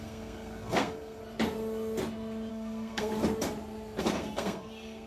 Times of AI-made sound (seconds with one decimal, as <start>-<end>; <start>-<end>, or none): 0.0-1.2; 2.5-3.1; 4.0-5.1